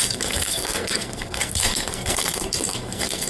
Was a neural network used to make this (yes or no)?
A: yes